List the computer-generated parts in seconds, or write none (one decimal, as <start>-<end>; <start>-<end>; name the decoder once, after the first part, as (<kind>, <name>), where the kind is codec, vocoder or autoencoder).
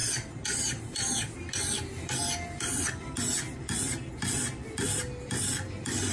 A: none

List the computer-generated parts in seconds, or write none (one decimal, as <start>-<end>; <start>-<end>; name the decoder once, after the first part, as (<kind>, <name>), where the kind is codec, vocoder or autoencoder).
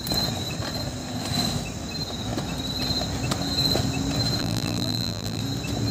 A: 4.4-5.4 (vocoder, BigVGAN v2)